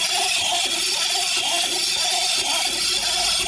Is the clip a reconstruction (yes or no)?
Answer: no